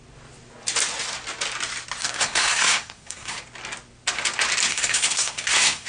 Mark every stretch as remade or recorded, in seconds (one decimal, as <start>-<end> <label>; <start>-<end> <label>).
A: 0.0-2.0 recorded; 2.0-3.4 remade; 3.4-4.7 recorded; 4.7-5.9 remade